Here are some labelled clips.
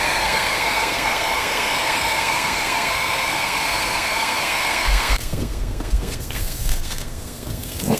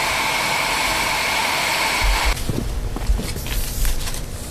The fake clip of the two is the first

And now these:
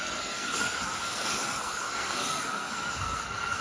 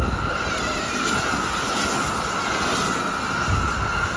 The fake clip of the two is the first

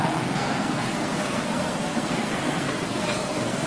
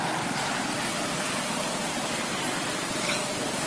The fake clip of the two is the first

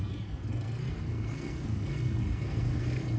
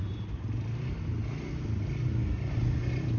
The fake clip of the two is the first